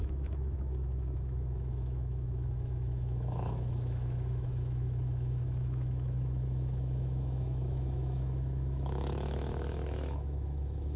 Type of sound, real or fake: fake